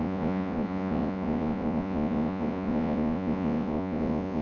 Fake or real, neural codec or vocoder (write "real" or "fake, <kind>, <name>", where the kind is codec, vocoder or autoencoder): fake, vocoder, Vocos